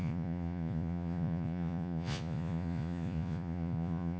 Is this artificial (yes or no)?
yes